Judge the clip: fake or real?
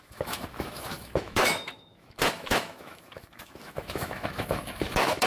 fake